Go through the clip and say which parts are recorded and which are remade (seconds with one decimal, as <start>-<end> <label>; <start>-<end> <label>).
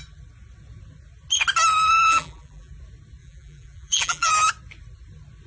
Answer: 0.0-1.9 recorded; 1.9-2.7 remade; 2.7-3.2 recorded; 3.2-4.3 remade; 4.3-5.5 recorded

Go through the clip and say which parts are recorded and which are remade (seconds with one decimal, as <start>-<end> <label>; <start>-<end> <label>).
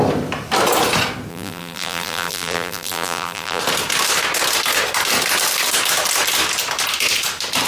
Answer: 0.0-1.3 recorded; 1.3-3.6 remade; 3.6-7.7 recorded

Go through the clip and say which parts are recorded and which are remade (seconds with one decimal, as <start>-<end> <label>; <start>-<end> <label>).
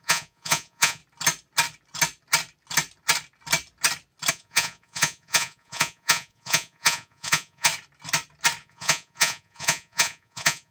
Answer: 0.0-1.0 remade; 1.0-4.3 recorded; 4.3-7.7 remade; 7.7-8.6 recorded; 8.6-10.7 remade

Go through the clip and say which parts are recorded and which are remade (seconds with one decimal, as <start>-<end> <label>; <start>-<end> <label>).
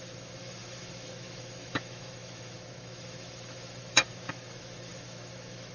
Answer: 0.0-5.7 remade